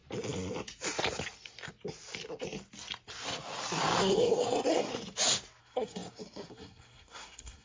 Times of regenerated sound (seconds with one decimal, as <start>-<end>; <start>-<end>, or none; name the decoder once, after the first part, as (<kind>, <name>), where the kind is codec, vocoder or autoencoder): 4.0-4.9 (codec, SNAC); 5.6-7.6